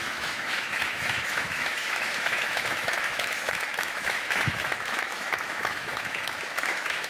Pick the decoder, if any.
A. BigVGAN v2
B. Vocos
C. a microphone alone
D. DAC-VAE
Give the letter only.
D